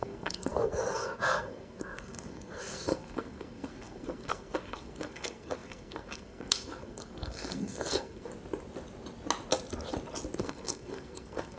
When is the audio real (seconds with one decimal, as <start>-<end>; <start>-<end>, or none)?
8.3-10.4